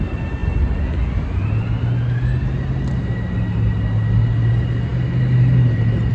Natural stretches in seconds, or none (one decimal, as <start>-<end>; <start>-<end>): 0.0-6.1

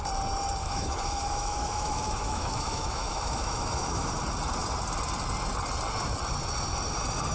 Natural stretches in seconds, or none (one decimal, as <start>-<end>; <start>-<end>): 0.0-0.6; 4.1-7.3

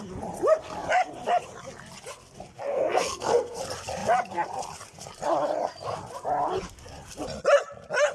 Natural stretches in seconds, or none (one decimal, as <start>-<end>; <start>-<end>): 0.0-2.7; 3.6-8.1

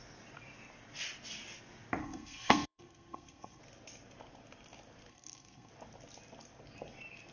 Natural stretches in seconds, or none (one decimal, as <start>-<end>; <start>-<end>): 0.0-2.0; 3.6-5.1; 5.7-7.3

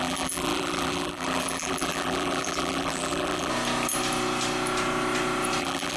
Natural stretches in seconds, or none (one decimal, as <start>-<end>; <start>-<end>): 3.5-5.6